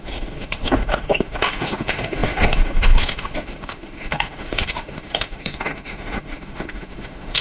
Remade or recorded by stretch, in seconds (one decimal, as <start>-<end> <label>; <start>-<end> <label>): 0.0-7.4 remade